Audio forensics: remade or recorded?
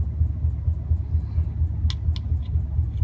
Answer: recorded